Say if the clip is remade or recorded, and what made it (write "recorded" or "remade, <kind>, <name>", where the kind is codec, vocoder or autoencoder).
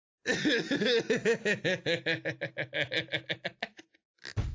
recorded